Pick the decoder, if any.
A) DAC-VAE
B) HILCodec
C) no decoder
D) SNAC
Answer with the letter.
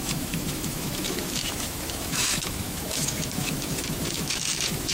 A